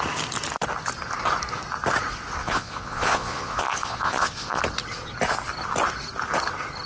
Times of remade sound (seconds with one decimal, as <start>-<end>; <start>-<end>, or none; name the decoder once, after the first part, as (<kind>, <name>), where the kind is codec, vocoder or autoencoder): 2.4-4.6 (vocoder, Vocos)